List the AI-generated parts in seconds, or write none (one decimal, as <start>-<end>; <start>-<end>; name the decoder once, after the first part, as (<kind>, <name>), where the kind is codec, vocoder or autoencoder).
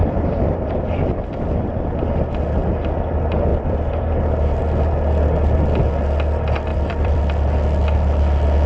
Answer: 0.0-1.1 (vocoder, BigVGAN v2); 3.5-4.6; 6.7-7.2